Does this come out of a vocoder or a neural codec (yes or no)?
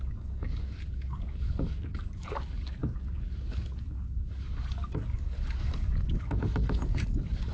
yes